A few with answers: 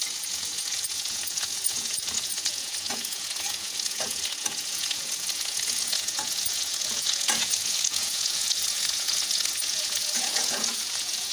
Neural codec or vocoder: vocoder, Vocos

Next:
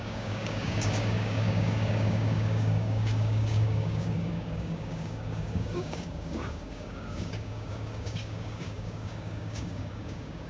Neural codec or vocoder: codec, DAC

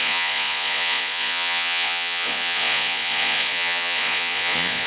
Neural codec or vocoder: vocoder, Vocos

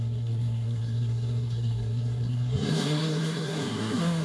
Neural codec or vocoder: codec, SNAC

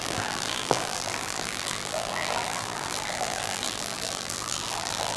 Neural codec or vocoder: vocoder, BigVGAN v2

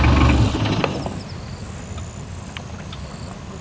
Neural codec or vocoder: none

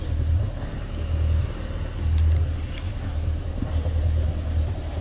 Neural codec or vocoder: none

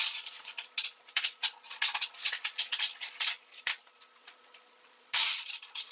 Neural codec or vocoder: vocoder, Vocos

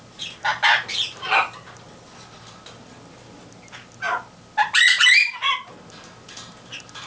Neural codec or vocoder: none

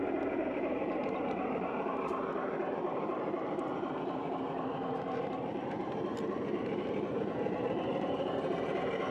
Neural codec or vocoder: vocoder, BigVGAN v2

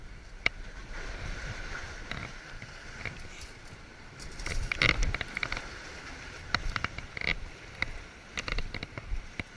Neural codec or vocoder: none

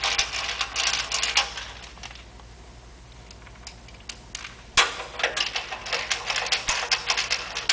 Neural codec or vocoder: none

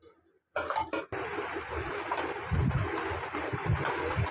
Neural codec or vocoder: none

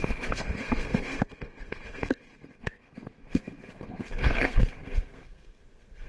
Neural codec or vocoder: codec, SNAC